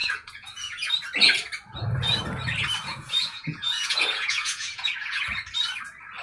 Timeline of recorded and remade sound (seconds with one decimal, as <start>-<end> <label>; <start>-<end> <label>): 0.0-0.9 remade; 0.9-2.9 recorded; 2.9-4.9 remade; 4.9-6.2 recorded